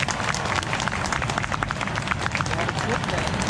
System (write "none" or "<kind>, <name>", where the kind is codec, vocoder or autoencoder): none